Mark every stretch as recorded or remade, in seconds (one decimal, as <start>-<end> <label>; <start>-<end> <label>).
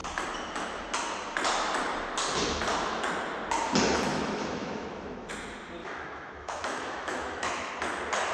0.0-4.1 recorded; 4.1-5.3 remade; 5.3-5.8 recorded; 5.8-7.7 remade; 7.7-8.3 recorded